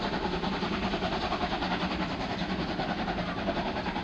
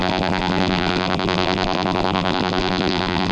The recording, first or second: first